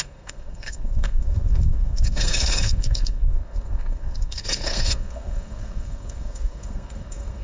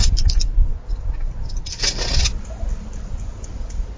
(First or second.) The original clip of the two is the second